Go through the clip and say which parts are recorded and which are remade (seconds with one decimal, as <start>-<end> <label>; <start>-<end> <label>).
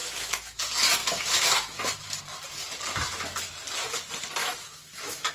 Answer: 0.0-0.6 remade; 0.6-1.0 recorded; 1.0-2.2 remade; 2.2-4.4 recorded; 4.4-5.3 remade